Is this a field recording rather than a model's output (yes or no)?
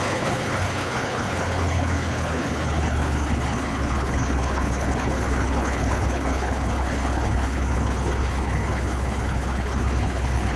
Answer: no